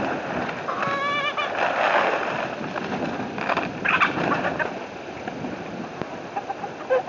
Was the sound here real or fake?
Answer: real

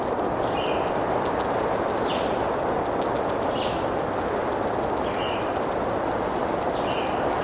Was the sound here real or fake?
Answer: real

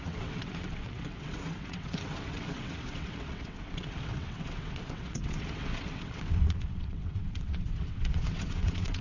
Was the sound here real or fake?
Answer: fake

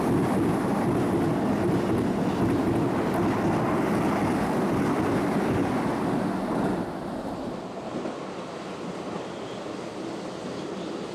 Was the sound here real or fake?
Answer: real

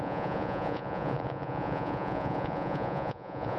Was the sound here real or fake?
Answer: fake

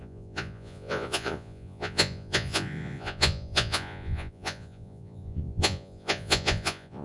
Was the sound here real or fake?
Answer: fake